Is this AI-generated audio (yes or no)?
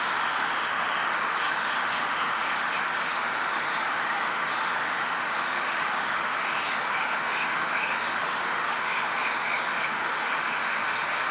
yes